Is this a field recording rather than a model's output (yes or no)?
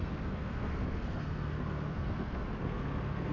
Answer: no